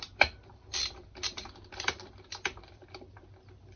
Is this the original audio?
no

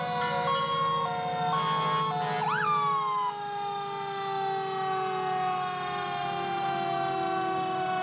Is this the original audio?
yes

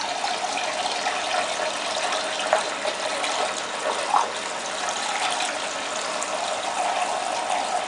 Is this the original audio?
yes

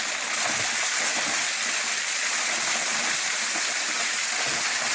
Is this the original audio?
yes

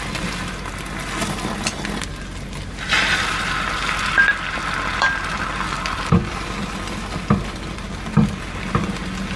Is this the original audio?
yes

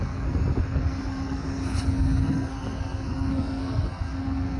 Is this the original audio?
no